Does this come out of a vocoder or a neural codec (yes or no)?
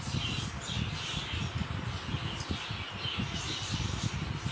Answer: no